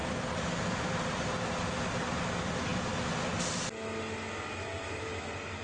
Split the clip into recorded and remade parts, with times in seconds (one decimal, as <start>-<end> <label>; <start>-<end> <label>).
0.0-5.6 recorded